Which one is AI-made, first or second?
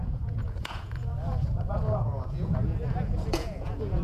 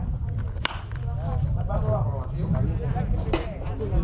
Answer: first